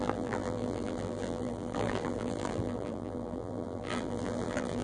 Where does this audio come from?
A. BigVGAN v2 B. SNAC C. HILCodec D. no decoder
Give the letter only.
A